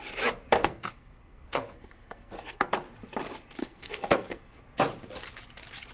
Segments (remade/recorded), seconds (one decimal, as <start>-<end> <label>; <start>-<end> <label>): 0.0-0.6 recorded; 0.6-2.7 remade; 2.7-3.6 recorded; 3.6-4.6 remade; 4.6-5.9 recorded